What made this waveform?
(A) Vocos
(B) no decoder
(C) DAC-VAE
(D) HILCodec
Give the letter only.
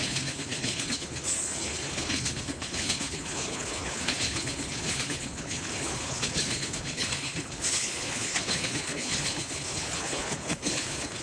D